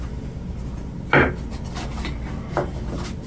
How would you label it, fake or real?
real